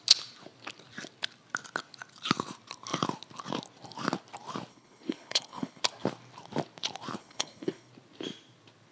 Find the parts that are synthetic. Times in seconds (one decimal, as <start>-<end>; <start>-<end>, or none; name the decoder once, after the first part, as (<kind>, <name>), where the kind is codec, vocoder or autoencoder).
4.7-5.8 (codec, HILCodec); 7.2-7.9

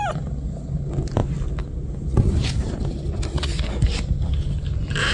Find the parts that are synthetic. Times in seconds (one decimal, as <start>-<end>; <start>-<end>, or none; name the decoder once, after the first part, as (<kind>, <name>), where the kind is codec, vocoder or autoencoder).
none

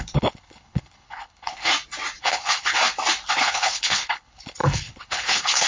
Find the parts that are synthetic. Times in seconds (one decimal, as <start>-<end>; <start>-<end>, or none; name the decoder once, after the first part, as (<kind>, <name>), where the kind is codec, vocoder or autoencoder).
0.0-1.7 (codec, HILCodec); 2.2-2.8; 3.3-5.7

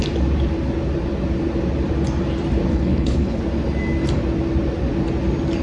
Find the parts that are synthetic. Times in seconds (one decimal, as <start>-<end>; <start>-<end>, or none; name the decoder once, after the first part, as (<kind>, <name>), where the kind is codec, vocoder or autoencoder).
2.7-3.4 (codec, HILCodec)

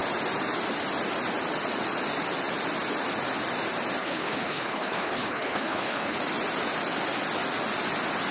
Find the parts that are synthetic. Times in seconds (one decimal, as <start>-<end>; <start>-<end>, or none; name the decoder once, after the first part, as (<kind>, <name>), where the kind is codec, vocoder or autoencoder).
4.0-6.2 (codec, HILCodec)

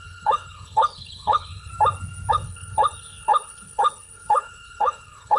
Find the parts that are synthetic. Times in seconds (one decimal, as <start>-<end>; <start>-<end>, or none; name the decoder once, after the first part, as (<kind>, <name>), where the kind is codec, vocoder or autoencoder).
0.0-1.7 (codec, HILCodec); 2.3-5.4